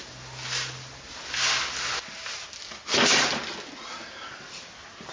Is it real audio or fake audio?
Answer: real